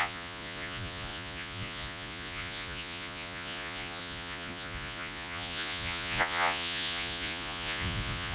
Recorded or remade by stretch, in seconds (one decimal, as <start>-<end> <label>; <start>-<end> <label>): 0.0-8.3 remade